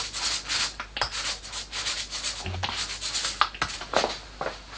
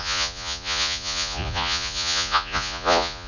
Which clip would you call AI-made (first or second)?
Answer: second